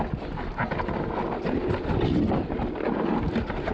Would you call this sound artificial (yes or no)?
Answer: no